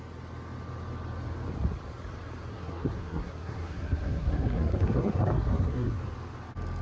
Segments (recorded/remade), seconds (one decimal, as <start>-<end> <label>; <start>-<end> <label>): 0.0-2.5 recorded; 2.5-6.0 remade; 6.0-6.8 recorded